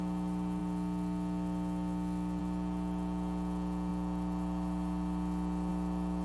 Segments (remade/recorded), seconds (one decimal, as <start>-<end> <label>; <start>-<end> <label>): 0.0-6.2 recorded